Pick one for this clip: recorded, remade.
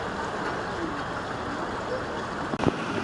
recorded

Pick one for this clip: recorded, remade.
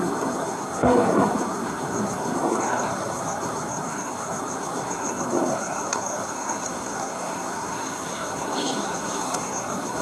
remade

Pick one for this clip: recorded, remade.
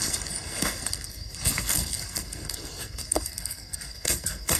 remade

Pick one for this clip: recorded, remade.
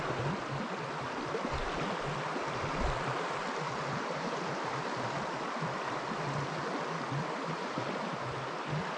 recorded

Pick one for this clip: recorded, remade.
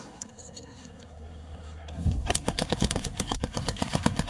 remade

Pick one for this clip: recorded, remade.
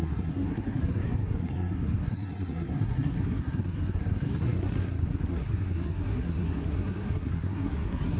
remade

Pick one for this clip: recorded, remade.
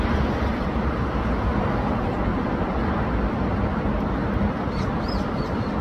recorded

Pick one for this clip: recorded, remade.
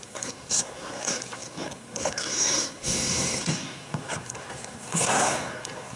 remade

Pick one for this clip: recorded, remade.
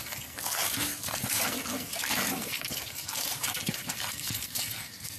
remade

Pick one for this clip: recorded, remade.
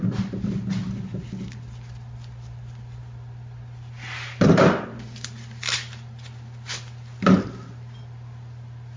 recorded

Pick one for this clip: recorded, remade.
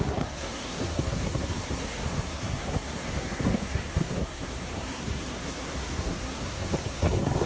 remade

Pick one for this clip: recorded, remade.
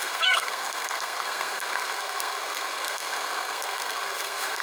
remade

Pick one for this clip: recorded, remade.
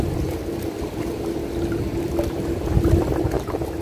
recorded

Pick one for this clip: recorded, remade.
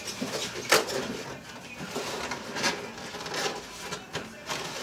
recorded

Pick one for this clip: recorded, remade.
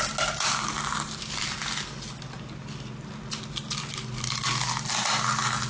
recorded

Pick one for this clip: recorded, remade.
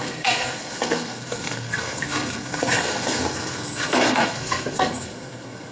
remade